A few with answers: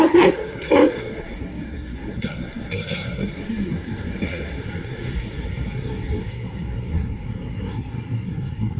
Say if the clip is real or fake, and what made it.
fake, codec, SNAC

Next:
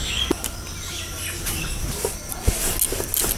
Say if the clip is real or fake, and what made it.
real